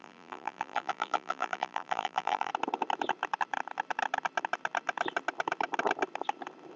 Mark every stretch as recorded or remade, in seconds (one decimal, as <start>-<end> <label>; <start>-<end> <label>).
0.0-2.5 remade; 2.5-6.8 recorded